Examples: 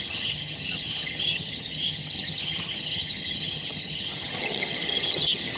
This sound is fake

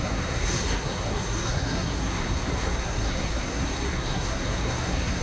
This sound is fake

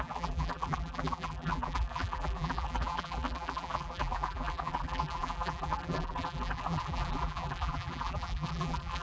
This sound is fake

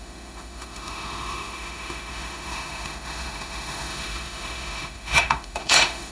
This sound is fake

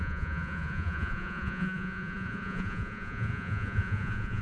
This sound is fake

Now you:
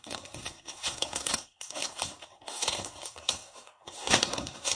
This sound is fake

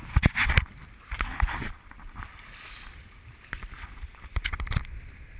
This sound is real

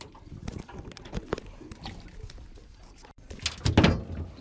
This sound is real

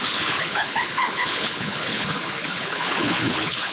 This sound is fake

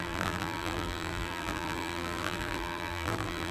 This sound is fake